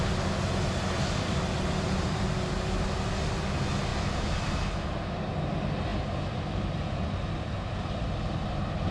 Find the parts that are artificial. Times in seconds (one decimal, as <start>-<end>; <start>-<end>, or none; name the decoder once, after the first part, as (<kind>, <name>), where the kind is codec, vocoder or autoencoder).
5.9-6.8 (vocoder, BigVGAN v2)